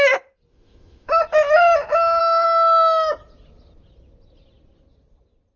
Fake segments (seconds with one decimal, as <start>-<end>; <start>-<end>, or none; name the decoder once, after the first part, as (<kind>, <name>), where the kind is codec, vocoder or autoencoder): 0.5-1.2 (autoencoder, DAC-VAE); 2.2-3.1